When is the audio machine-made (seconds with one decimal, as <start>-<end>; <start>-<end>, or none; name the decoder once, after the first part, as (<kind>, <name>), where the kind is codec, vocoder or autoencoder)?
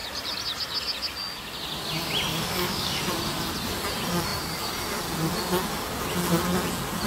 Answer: 2.3-3.0 (codec, DAC)